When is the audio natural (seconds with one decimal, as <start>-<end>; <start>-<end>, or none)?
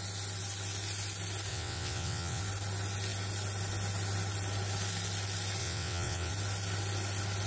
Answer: 0.0-1.5; 2.4-5.6; 6.3-7.5